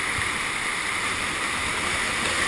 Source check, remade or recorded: recorded